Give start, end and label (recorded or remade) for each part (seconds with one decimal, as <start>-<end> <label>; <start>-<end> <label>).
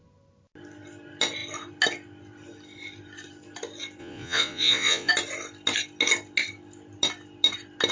0.0-4.0 recorded; 4.0-5.1 remade; 5.1-7.9 recorded